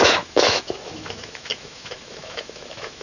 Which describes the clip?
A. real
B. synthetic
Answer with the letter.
B